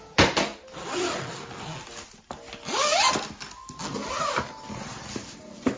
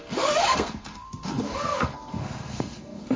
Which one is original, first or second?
first